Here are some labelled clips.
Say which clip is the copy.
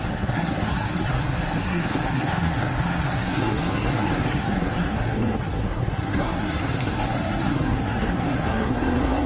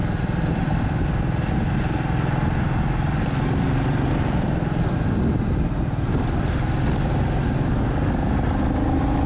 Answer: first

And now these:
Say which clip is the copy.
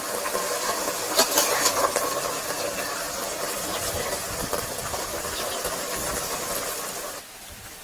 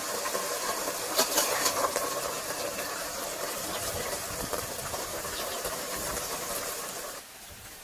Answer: second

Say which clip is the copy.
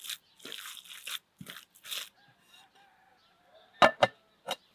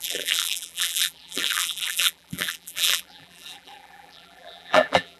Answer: second